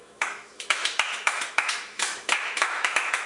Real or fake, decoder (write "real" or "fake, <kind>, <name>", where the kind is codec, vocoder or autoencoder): fake, autoencoder, DAC-VAE